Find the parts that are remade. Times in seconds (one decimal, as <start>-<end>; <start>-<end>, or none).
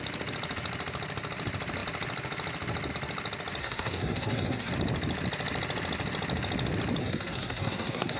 3.6-4.7; 7.0-8.2